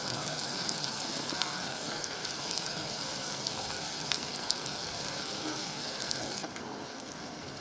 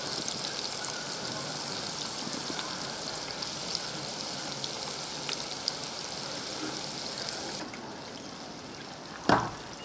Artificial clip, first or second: first